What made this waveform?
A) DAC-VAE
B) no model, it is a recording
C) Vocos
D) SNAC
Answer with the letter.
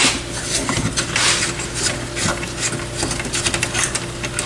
B